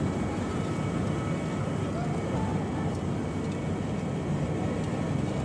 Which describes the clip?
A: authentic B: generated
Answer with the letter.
A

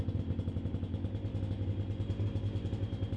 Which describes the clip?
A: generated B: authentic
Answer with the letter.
A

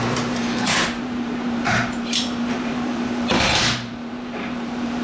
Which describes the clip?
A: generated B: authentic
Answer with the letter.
A